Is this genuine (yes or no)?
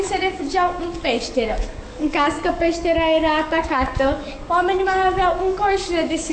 no